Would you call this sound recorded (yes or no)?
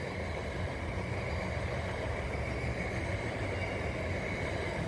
yes